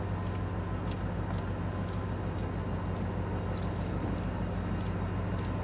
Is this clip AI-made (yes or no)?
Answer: no